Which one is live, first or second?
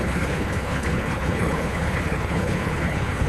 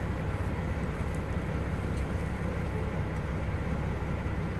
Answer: second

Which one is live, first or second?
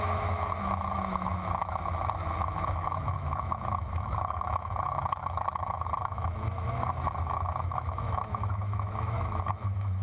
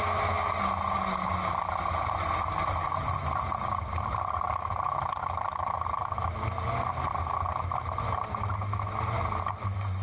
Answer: second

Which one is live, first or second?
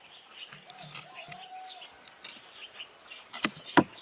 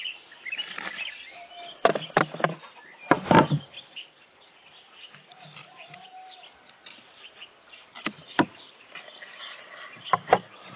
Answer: first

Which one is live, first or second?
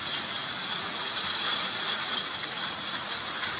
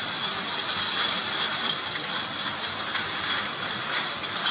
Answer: second